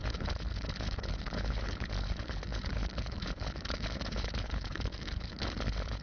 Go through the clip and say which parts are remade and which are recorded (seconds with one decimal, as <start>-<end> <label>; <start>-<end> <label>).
0.0-6.0 remade